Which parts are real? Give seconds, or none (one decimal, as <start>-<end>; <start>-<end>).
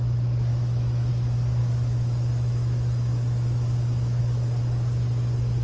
0.0-0.5; 1.1-1.6; 4.2-5.6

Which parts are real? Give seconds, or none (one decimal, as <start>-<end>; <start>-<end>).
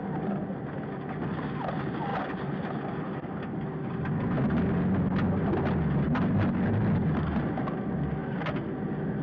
0.0-9.2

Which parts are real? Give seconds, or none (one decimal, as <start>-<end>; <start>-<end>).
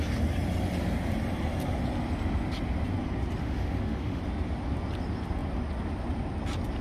0.0-3.4; 4.2-6.8